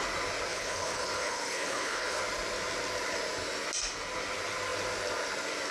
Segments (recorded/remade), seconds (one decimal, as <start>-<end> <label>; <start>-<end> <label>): 0.0-0.5 recorded; 0.5-2.2 remade; 2.2-5.7 recorded